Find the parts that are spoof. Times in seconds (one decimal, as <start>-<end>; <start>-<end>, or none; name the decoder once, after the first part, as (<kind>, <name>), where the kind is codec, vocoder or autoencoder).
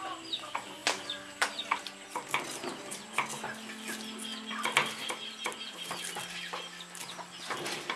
none